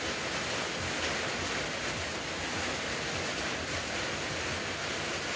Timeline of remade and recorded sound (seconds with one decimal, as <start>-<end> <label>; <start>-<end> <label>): 0.0-5.4 recorded